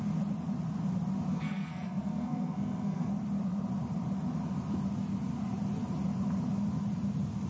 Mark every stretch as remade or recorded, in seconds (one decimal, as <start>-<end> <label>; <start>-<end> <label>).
0.0-1.3 recorded; 1.3-3.1 remade; 3.1-7.5 recorded